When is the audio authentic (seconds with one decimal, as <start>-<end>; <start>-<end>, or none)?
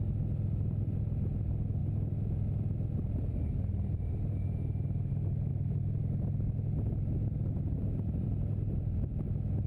0.0-9.7